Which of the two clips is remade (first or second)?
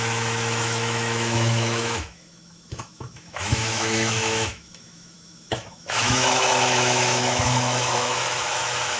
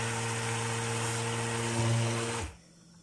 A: first